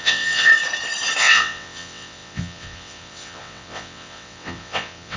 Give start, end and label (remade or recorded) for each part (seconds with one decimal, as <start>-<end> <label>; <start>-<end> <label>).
0.0-0.5 remade; 0.5-1.2 recorded; 1.2-5.2 remade